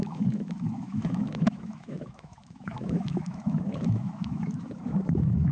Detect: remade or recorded remade